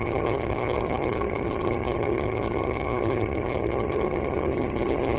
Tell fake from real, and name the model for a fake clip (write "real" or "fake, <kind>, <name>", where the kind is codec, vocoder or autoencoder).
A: fake, vocoder, HiFi-GAN